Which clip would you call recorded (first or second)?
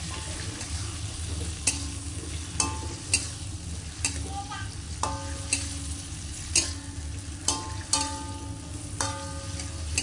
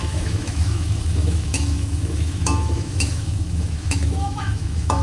first